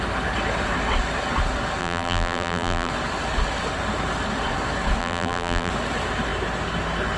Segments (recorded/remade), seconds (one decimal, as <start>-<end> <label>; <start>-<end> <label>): 0.0-1.8 recorded; 1.8-2.9 remade; 2.9-5.0 recorded; 5.0-5.7 remade; 5.7-7.2 recorded